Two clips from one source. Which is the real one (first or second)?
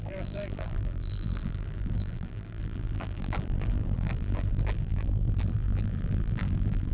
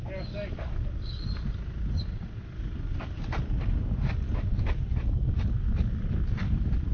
second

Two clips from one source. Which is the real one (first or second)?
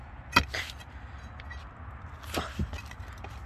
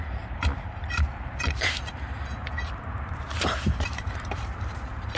first